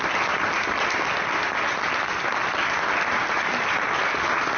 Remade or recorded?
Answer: recorded